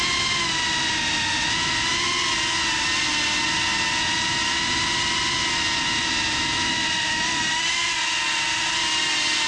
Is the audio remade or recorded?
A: recorded